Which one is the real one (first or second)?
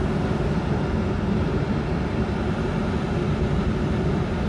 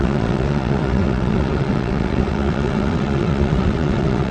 first